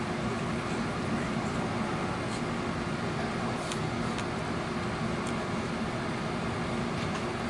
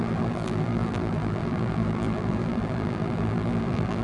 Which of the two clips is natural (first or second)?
first